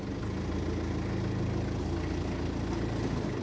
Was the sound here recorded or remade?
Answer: recorded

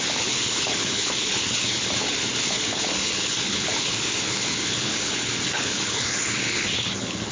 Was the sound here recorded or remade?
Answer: remade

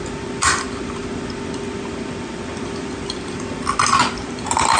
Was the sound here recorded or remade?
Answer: recorded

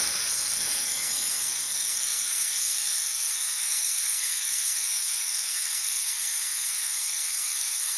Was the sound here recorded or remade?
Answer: remade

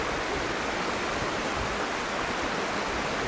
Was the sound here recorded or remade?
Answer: recorded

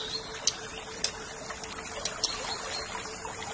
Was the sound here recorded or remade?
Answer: remade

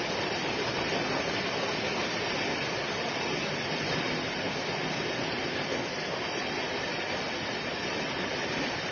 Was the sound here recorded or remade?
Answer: recorded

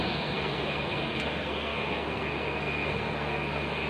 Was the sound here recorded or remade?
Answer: remade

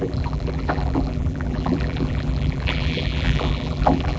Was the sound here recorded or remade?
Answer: remade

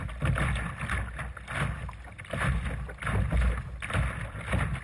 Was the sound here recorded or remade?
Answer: recorded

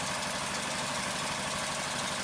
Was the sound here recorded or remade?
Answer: recorded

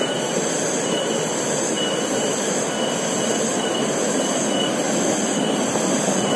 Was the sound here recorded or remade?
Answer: recorded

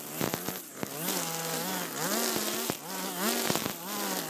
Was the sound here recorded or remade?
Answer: recorded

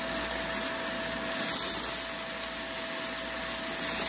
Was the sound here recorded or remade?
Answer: recorded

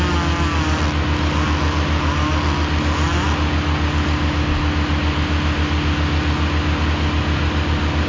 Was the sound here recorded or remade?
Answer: recorded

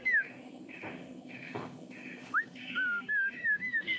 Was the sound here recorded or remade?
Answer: remade